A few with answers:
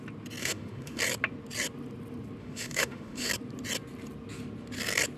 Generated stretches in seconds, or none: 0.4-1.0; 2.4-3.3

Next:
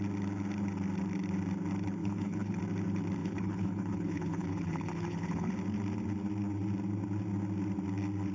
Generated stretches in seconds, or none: 2.0-2.6; 3.2-5.5

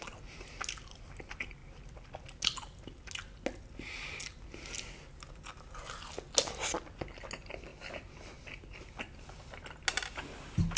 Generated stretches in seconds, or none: none

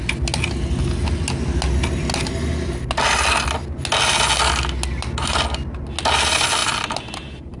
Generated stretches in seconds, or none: none